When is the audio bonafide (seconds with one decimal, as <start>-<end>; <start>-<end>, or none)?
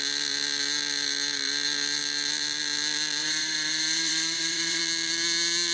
0.0-3.2; 4.8-5.7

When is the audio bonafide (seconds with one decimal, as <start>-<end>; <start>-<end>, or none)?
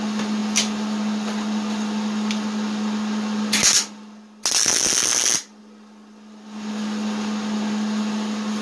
0.0-8.6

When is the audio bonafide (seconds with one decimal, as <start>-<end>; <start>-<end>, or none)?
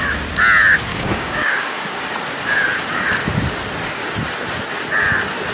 0.0-0.9; 2.0-5.5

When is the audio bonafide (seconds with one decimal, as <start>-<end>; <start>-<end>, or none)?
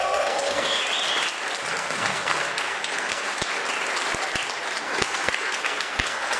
0.8-1.7; 3.3-4.8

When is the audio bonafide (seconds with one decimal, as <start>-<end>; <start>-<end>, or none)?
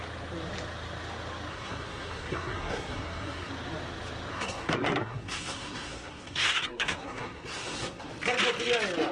0.0-1.5; 3.5-4.3; 8.1-9.1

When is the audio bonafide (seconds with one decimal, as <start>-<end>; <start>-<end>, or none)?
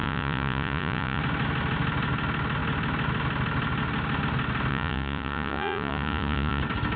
1.2-4.7; 6.6-7.0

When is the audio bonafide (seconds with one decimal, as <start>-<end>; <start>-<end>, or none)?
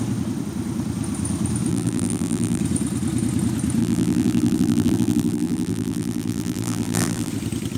0.0-1.7; 2.6-3.8; 7.3-7.8